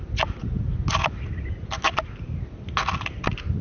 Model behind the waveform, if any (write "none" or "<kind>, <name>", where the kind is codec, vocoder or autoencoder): none